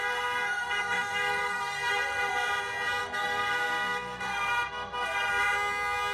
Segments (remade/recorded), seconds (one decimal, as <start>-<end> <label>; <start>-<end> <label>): 0.0-2.3 remade; 2.3-3.0 recorded; 3.0-5.3 remade; 5.3-6.1 recorded